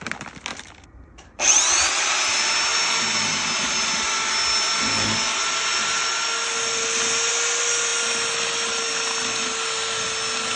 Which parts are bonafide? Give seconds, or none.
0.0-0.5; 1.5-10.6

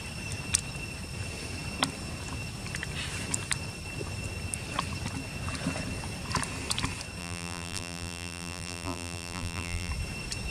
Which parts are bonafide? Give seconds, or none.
0.0-7.2; 9.9-10.5

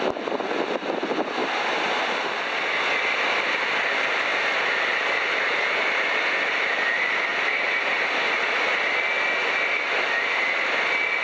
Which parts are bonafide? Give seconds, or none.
0.0-1.4; 2.1-7.3; 8.5-11.2

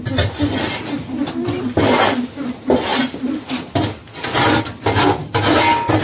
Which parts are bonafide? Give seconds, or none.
0.0-2.9; 3.5-6.0

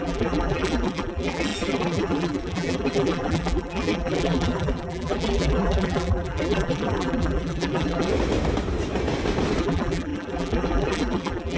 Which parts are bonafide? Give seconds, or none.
8.1-9.6